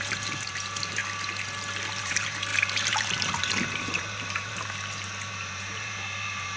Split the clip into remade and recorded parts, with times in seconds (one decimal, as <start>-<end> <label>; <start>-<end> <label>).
0.0-1.0 remade; 1.0-1.9 recorded; 1.9-6.6 remade